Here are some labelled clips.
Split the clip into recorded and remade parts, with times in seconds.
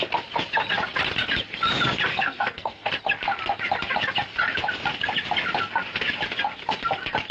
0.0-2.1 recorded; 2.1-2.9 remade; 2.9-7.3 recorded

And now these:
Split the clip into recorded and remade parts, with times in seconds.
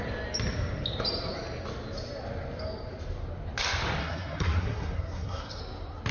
0.0-4.0 recorded; 4.0-5.6 remade; 5.6-6.1 recorded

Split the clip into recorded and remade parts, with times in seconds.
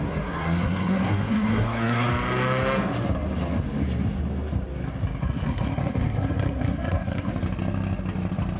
0.0-2.1 remade; 2.1-5.2 recorded; 5.2-7.3 remade; 7.3-8.6 recorded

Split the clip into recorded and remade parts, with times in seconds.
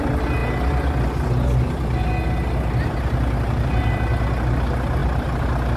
0.0-5.8 recorded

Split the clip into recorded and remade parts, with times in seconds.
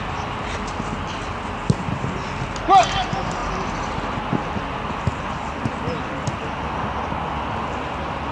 0.0-8.3 recorded